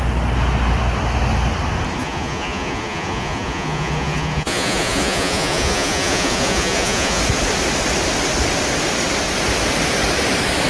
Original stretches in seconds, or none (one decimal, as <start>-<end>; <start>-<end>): 0.0-2.0; 7.2-10.7

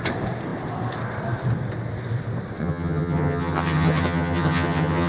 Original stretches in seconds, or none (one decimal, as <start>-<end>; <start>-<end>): 0.0-2.6

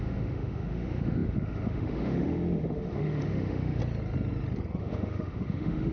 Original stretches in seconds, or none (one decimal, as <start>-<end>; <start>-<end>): 3.8-4.8

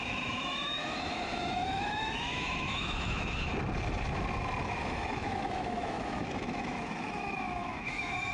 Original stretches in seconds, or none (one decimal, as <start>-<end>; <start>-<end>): 3.5-4.6

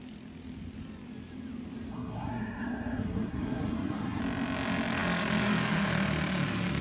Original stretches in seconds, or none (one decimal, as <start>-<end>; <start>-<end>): 0.0-1.9; 4.2-6.8

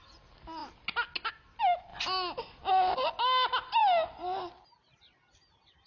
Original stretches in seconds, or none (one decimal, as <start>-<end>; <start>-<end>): 0.0-5.9